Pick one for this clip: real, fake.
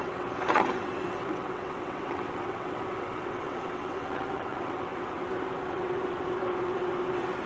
fake